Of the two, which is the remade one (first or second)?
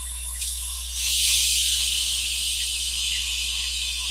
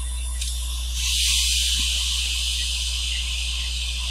first